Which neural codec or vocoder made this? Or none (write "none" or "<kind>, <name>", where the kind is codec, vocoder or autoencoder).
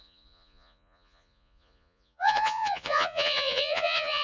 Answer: vocoder, Vocos